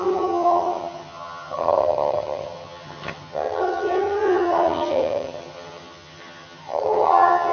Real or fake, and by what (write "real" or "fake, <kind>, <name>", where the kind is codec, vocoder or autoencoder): fake, vocoder, HiFi-GAN